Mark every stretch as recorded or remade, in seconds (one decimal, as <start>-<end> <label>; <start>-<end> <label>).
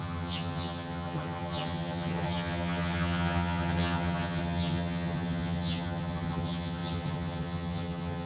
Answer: 0.0-8.3 remade